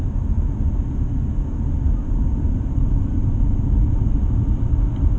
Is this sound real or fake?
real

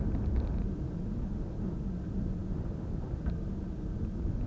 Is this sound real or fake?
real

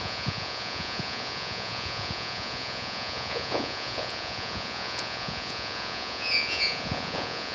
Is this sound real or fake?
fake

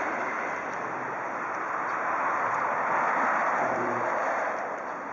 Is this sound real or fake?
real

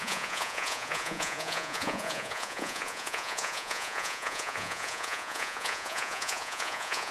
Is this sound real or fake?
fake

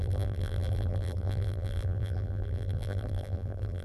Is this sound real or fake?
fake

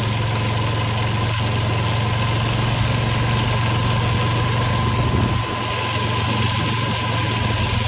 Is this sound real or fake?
real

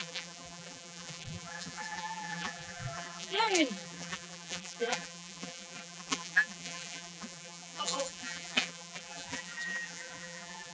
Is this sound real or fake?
fake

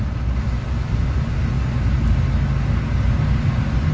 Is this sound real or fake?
real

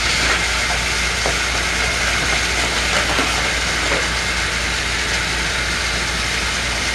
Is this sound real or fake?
real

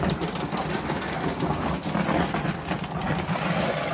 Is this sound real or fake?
real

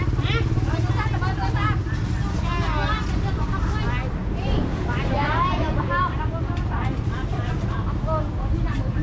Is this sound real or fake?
real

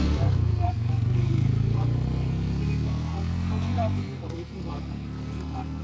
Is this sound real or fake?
fake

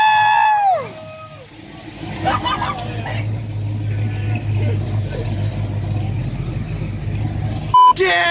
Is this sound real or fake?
real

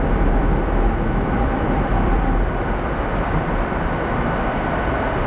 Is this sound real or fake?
real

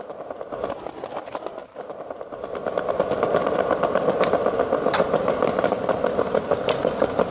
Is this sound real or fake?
real